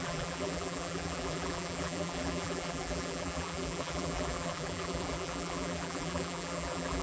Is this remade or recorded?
remade